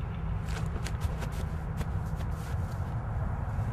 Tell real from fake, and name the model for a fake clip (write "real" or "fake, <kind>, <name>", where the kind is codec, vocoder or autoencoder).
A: real